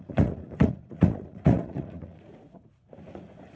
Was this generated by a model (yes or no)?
yes